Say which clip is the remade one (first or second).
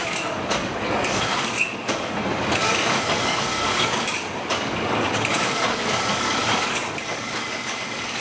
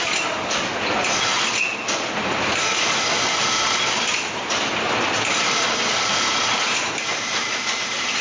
first